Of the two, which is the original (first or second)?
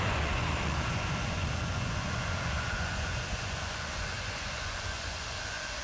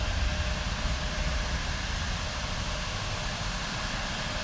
second